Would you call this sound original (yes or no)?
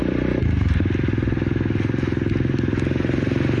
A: yes